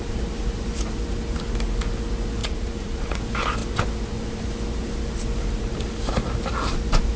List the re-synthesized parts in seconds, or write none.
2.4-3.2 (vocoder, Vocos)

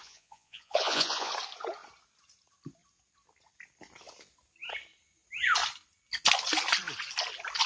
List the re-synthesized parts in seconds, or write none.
0.0-1.3 (vocoder, Vocos)

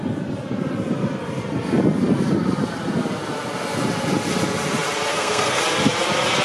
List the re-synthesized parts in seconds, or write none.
5.1-5.6 (codec, SNAC)

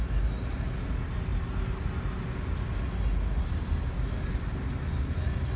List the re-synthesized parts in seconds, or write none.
none

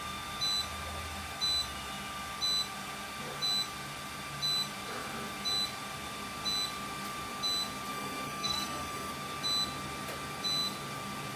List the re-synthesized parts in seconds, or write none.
7.9-9.1 (codec, SNAC)